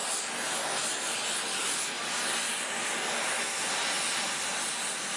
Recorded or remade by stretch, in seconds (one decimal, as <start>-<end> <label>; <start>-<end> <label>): 0.0-5.2 recorded